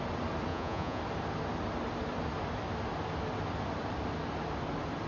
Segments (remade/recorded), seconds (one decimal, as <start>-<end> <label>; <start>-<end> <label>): 0.0-0.5 recorded; 0.5-1.0 remade; 1.0-5.1 recorded

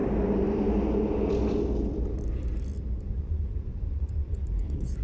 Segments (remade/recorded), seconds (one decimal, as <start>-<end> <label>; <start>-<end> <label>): 0.0-3.0 recorded; 3.0-5.0 remade

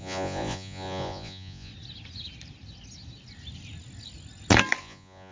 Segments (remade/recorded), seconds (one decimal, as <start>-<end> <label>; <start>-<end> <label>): 0.0-1.7 remade; 1.7-4.8 recorded; 4.8-5.3 remade

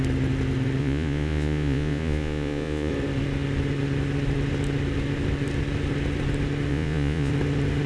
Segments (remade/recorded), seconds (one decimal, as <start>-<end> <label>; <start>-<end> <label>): 0.0-0.8 recorded; 0.8-2.9 remade; 2.9-6.7 recorded; 6.7-7.3 remade; 7.3-7.9 recorded

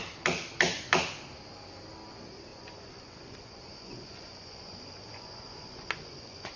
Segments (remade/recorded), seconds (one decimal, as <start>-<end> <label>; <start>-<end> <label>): 0.0-2.5 recorded; 2.5-6.6 remade